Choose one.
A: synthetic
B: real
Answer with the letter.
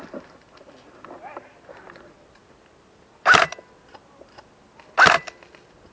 B